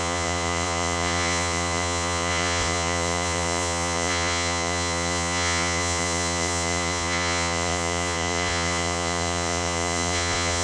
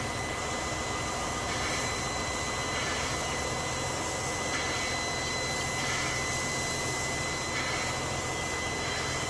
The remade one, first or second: first